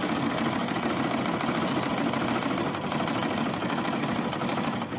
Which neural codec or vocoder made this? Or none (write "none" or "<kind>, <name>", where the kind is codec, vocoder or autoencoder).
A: none